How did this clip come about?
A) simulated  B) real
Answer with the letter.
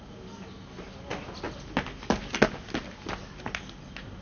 B